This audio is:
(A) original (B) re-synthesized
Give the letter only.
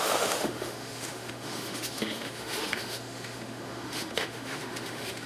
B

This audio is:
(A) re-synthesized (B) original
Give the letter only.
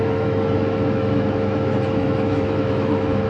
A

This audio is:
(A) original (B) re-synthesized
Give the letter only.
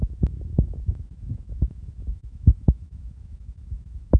B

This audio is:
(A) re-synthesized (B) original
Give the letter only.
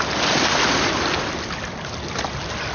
B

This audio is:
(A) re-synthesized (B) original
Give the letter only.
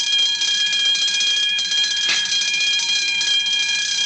B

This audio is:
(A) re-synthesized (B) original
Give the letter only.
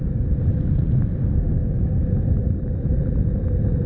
B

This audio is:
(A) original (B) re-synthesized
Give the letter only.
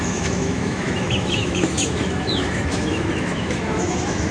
B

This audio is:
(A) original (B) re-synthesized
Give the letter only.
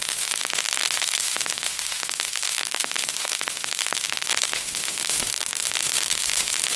B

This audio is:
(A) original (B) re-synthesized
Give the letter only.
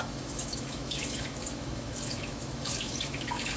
B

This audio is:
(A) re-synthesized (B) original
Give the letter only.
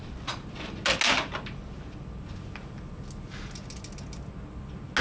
B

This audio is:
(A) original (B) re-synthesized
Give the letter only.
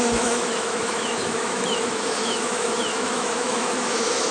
B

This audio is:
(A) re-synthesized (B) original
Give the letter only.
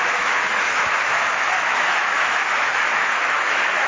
A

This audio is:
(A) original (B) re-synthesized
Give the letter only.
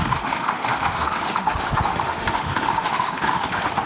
B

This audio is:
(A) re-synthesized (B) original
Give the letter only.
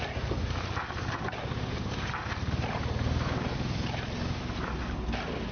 B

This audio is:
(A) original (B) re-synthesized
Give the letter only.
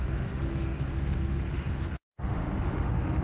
B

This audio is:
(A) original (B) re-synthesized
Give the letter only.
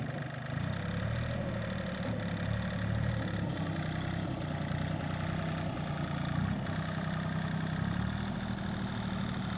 A